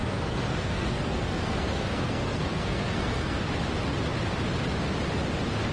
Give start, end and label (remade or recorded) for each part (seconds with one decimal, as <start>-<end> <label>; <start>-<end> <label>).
0.0-3.4 remade; 3.4-5.7 recorded